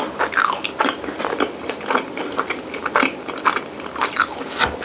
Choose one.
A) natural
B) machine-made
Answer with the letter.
A